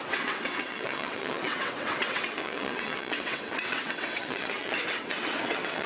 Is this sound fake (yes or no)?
yes